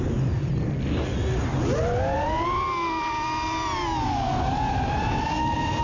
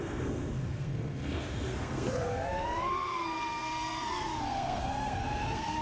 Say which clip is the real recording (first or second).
first